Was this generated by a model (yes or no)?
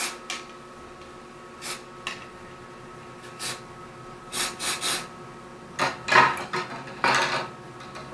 no